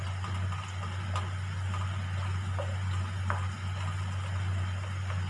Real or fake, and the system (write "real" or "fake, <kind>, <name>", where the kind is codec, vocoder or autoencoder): real